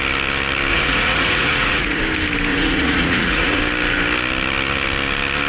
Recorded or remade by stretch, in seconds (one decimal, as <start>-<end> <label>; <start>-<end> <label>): 0.0-0.7 recorded; 0.7-2.0 remade; 2.0-2.5 recorded; 2.5-3.6 remade; 3.6-5.5 recorded